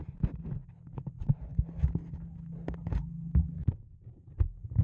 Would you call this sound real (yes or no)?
yes